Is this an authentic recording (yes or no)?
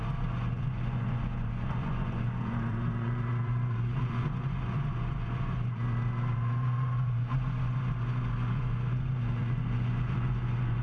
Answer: no